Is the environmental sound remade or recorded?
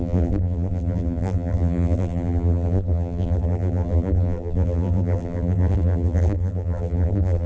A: remade